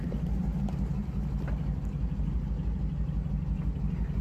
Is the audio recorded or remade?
recorded